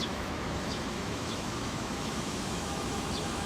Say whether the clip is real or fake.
fake